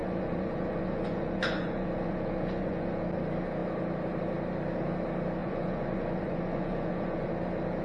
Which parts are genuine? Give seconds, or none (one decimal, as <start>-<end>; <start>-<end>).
3.0-5.4; 7.3-7.8